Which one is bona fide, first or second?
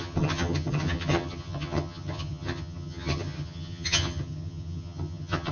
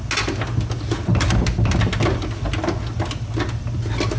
second